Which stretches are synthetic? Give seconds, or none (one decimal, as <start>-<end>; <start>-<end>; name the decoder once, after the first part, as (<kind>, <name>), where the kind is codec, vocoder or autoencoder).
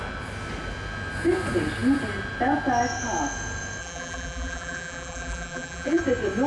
3.8-6.0 (vocoder, BigVGAN v2)